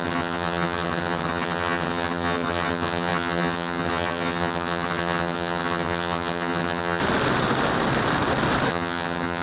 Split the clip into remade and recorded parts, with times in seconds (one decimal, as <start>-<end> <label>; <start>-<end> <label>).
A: 0.0-7.0 remade; 7.0-8.7 recorded; 8.7-9.4 remade

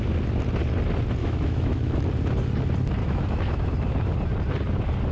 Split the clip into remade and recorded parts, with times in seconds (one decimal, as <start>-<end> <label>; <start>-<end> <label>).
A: 0.0-1.2 recorded; 1.2-2.0 remade; 2.0-3.0 recorded; 3.0-3.7 remade; 3.7-5.1 recorded